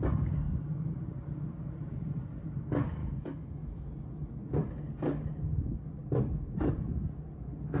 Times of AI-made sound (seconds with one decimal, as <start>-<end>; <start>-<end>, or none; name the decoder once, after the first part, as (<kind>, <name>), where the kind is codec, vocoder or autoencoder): 3.0-3.9 (autoencoder, DAC-VAE)

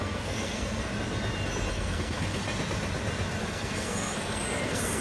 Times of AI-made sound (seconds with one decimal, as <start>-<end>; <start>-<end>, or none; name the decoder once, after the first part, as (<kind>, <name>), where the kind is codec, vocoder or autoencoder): 0.0-0.9 (codec, SNAC); 1.7-2.4; 3.4-5.0

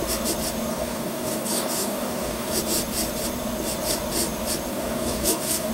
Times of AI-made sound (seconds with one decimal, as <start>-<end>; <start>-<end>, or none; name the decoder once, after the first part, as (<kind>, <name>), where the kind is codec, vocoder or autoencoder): 0.7-2.5 (codec, DAC); 4.7-5.7

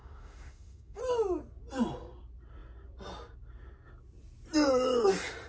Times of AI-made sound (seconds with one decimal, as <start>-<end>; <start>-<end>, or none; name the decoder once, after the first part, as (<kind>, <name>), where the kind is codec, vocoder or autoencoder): 0.0-1.0 (autoencoder, DAC-VAE)

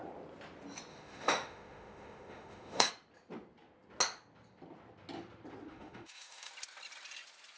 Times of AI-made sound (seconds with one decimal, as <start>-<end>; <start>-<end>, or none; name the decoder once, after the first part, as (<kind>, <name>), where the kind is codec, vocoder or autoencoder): 0.9-2.9 (autoencoder, DAC-VAE); 5.7-6.5

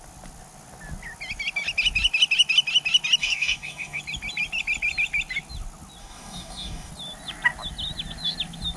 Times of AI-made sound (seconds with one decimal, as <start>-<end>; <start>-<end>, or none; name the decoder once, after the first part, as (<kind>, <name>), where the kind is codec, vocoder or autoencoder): 3.2-4.0 (codec, DAC); 6.0-6.9

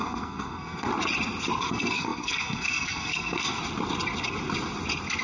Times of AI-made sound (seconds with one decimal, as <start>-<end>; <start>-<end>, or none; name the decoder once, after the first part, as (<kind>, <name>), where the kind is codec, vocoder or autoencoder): 0.0-0.9 (codec, SNAC); 1.6-3.6

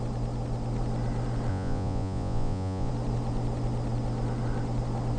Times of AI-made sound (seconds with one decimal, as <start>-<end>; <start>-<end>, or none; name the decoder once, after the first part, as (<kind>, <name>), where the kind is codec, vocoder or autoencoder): 1.5-2.9 (vocoder, Vocos)